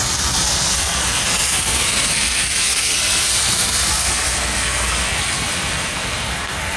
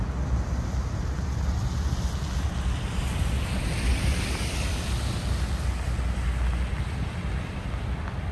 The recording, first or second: second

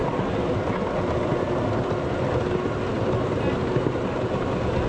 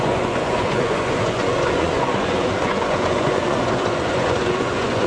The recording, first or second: first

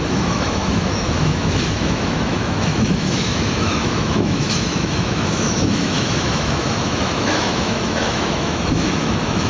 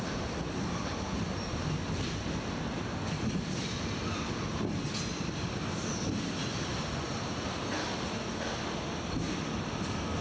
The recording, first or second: second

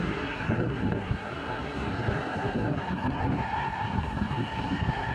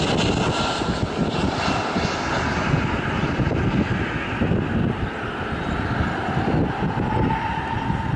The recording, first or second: second